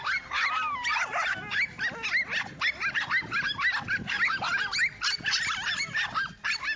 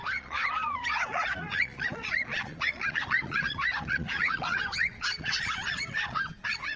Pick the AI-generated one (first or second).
second